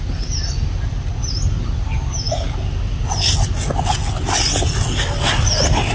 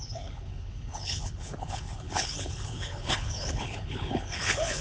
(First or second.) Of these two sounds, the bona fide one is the first